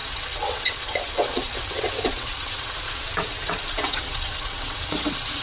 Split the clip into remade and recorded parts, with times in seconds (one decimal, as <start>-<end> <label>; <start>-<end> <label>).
0.0-5.4 remade